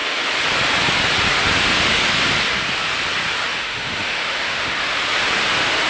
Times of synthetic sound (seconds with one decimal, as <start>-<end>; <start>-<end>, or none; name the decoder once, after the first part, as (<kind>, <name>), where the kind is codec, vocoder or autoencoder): 3.5-5.0 (autoencoder, DAC-VAE)